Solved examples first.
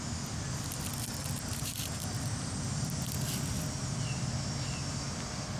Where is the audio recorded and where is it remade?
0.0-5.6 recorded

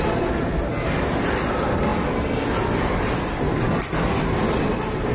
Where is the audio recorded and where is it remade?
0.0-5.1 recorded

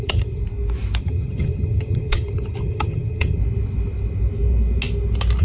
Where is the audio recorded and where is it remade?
0.0-0.4 remade; 0.4-1.0 recorded; 1.0-3.4 remade; 3.4-5.4 recorded

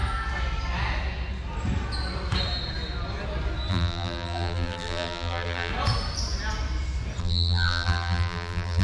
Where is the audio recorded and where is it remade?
0.0-3.7 recorded; 3.7-5.7 remade; 5.7-7.2 recorded; 7.2-8.8 remade